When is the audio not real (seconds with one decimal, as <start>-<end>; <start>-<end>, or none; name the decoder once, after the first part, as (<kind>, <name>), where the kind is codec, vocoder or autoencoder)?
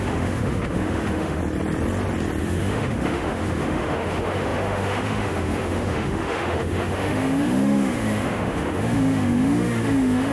0.0-1.4 (autoencoder, DAC-VAE); 2.4-10.3